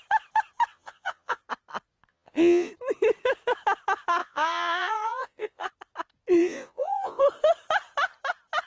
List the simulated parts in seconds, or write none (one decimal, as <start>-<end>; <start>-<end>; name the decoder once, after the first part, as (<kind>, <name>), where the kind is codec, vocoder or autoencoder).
0.7-1.4 (vocoder, Vocos); 2.1-2.7; 4.2-5.7; 6.4-7.2